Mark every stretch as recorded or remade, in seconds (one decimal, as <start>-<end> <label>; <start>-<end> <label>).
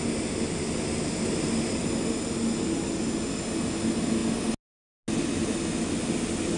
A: 0.0-6.6 recorded